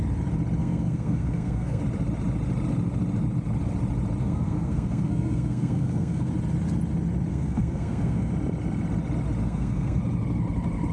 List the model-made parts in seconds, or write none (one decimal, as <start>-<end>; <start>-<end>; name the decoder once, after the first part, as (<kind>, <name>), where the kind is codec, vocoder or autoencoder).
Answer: 0.6-1.8 (codec, SNAC); 4.2-6.3; 7.3-8.3; 9.4-10.0